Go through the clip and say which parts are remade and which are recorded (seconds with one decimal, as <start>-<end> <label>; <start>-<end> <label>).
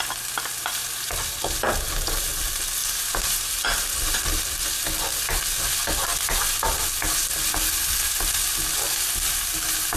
0.0-0.6 recorded; 0.6-1.1 remade; 1.1-2.8 recorded; 2.8-3.4 remade; 3.4-10.0 recorded